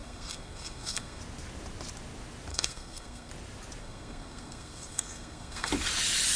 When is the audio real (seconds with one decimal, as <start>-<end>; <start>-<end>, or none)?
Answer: 1.2-2.5; 3.3-3.8; 5.7-6.4